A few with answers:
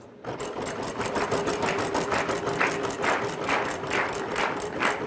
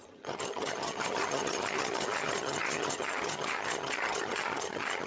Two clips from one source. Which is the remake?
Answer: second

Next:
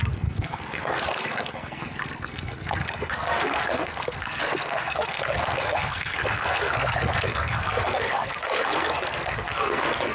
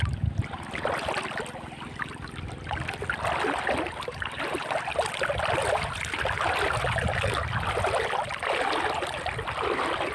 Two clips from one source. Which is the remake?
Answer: first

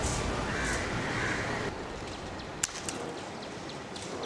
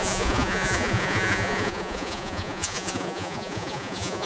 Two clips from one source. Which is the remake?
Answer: second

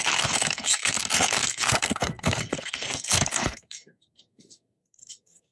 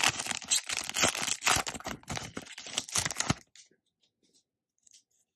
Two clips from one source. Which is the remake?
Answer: first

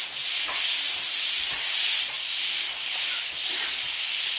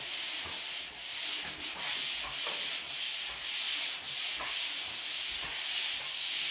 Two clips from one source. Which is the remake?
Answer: first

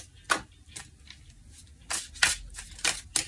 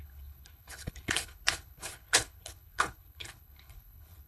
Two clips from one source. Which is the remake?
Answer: second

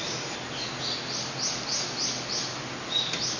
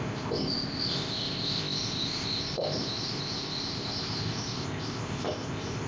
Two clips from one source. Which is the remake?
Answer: second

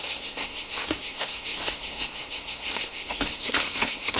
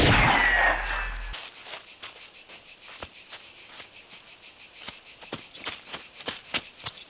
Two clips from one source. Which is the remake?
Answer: first